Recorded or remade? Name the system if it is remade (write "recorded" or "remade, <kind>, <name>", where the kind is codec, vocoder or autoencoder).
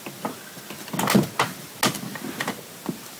recorded